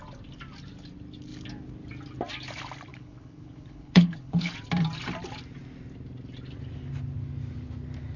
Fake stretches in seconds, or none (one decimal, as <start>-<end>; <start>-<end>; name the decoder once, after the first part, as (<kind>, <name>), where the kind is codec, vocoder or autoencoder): 2.9-4.5 (codec, HILCodec)